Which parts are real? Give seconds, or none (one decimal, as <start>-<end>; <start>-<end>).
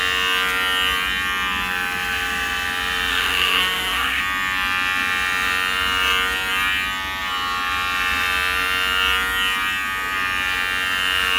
0.0-3.1; 4.2-11.4